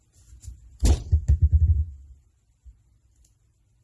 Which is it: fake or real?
real